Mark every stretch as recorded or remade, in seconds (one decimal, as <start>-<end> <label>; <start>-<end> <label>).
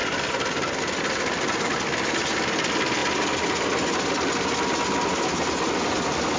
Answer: 0.0-0.8 recorded; 0.8-3.0 remade; 3.0-4.3 recorded; 4.3-6.4 remade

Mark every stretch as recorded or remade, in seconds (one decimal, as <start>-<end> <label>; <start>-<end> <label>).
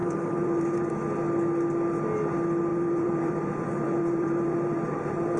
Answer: 0.0-0.9 remade; 0.9-2.7 recorded; 2.7-5.4 remade